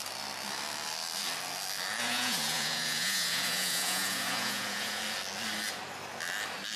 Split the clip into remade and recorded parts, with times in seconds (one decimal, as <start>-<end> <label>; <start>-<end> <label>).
0.0-2.0 recorded; 2.0-5.0 remade; 5.0-6.8 recorded